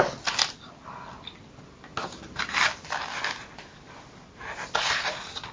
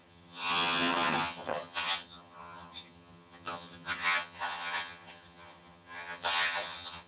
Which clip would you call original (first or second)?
first